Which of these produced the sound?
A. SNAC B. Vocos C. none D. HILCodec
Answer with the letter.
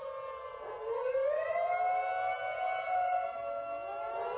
C